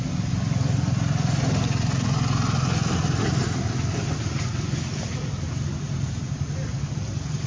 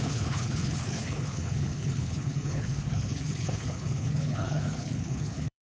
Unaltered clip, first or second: first